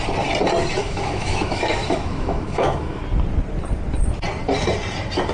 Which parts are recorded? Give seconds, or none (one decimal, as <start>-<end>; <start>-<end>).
0.0-0.8; 3.0-5.3